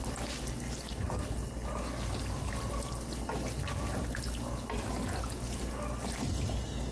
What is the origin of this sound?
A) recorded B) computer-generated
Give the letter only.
A